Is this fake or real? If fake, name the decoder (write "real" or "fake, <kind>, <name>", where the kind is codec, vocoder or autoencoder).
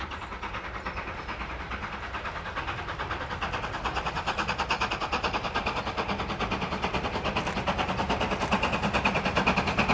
real